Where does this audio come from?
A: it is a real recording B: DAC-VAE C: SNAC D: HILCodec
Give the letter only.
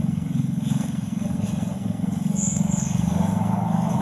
C